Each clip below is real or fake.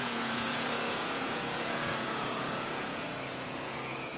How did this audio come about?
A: fake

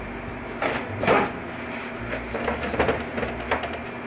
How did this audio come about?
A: real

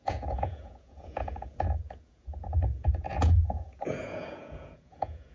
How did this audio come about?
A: fake